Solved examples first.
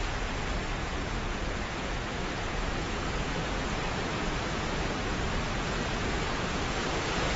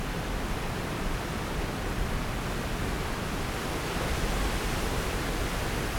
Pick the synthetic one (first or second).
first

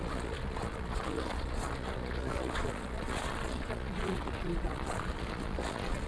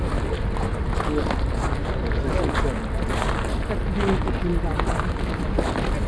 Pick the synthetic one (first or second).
first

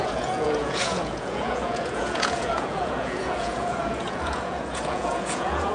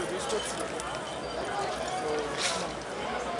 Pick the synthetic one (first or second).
first